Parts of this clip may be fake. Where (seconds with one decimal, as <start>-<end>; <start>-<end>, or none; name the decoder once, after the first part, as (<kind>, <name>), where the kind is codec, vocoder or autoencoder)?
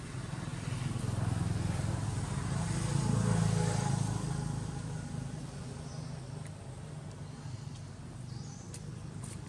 none